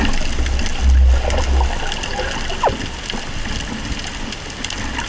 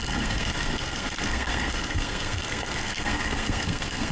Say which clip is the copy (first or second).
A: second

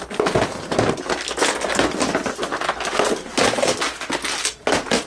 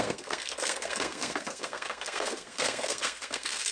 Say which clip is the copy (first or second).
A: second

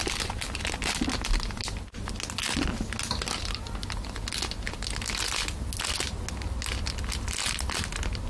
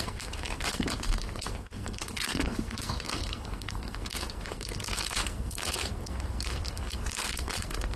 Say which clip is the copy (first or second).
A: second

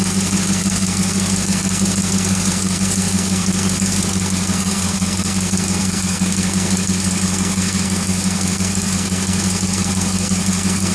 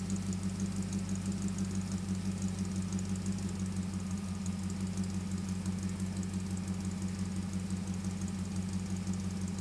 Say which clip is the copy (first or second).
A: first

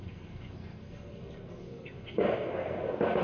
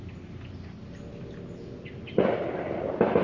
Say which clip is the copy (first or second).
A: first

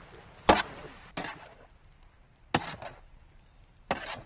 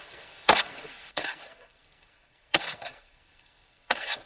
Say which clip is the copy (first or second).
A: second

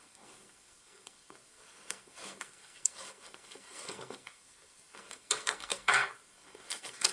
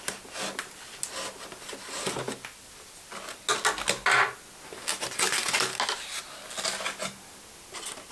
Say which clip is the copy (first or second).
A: first